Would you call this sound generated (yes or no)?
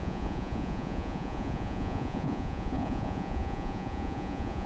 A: yes